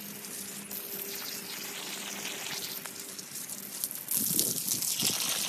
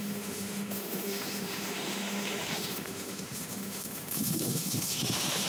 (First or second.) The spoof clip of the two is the second